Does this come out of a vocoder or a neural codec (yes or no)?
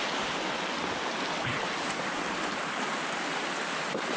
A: no